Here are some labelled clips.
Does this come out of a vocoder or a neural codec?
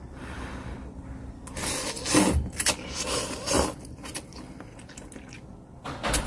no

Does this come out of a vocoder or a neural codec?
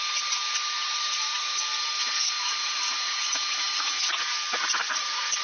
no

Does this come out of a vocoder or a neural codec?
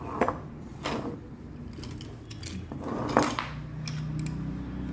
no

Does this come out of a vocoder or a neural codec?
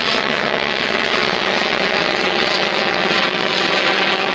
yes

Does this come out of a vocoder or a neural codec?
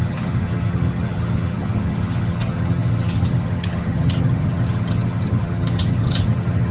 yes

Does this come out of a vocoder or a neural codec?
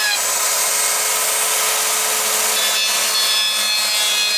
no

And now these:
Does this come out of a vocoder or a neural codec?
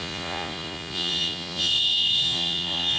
yes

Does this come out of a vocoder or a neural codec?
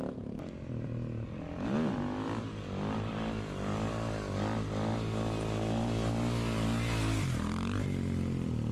no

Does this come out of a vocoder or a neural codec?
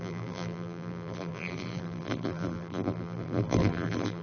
yes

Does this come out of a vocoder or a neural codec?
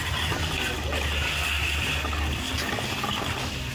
no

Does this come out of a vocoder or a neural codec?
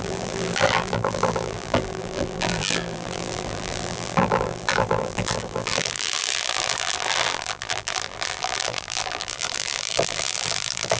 yes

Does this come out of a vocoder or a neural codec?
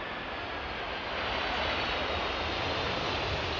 no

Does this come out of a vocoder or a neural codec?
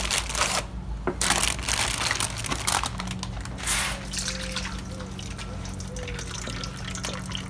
no